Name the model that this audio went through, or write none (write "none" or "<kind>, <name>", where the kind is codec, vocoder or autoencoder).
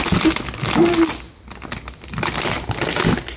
none